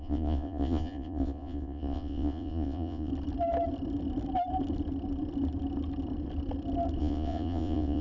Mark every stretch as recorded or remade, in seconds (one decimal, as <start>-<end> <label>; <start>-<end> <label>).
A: 0.0-3.1 remade; 3.1-7.0 recorded; 7.0-8.0 remade